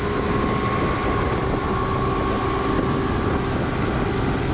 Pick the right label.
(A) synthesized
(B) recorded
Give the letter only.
B